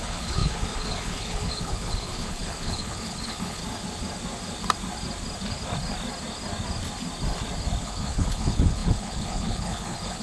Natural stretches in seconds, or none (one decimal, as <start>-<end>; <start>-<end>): 3.6-7.8